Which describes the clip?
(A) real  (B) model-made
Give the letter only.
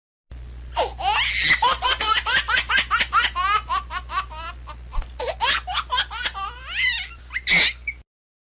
A